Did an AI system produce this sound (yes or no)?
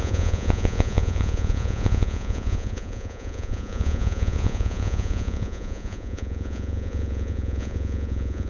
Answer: yes